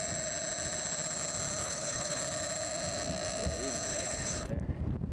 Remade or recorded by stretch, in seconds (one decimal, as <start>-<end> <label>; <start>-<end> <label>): 0.0-1.6 recorded; 1.6-2.2 remade; 2.2-3.9 recorded; 3.9-4.5 remade; 4.5-5.1 recorded